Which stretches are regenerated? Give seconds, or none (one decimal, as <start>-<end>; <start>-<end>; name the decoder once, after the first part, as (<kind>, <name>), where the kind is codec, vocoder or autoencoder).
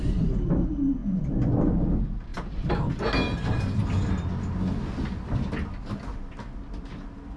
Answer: none